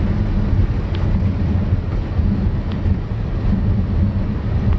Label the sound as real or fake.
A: real